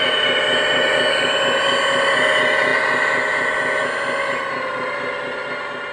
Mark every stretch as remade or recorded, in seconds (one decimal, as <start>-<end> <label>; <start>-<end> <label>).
0.0-5.9 recorded